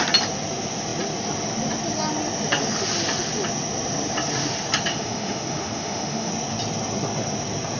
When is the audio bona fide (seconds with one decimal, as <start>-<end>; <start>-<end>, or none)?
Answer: 0.0-4.9; 6.3-7.8